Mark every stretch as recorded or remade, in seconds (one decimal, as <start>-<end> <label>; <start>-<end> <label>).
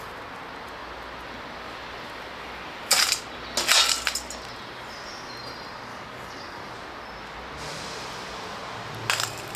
0.0-5.9 recorded; 5.9-6.7 remade; 6.7-9.6 recorded